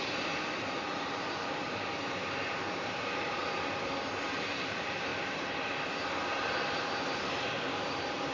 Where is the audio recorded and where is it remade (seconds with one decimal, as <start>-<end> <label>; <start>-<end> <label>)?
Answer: 0.0-3.4 remade; 3.4-4.1 recorded; 4.1-5.1 remade; 5.1-7.3 recorded; 7.3-8.3 remade